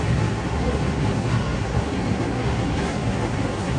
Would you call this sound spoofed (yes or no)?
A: yes